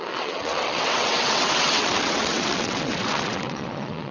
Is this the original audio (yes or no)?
no